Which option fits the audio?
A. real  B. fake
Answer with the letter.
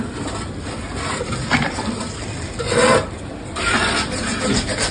A